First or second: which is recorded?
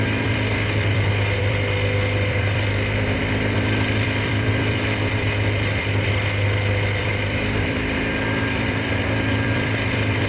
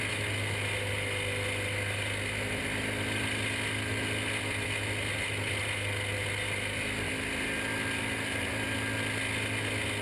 second